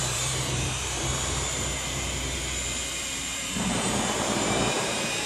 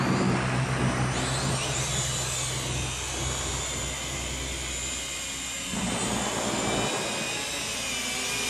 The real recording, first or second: second